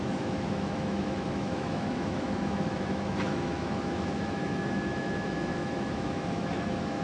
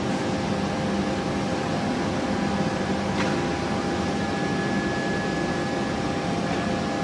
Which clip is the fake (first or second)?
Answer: first